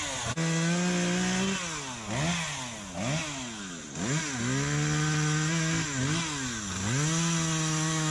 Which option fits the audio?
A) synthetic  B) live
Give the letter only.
B